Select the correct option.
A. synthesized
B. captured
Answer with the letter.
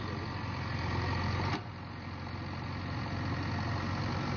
B